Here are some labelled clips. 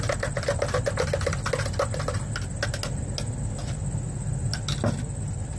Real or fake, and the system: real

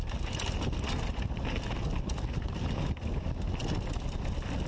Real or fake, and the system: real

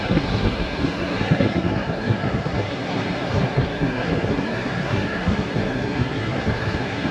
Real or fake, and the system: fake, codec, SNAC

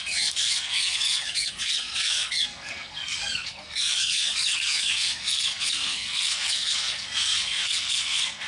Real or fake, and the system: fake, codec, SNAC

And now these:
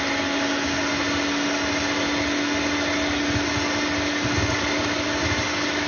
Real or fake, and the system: real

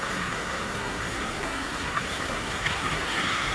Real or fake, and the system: fake, codec, SNAC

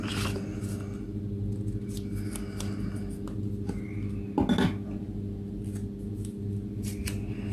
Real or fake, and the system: real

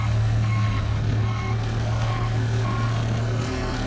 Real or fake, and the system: fake, codec, SNAC